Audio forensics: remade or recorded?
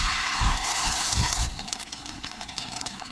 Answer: remade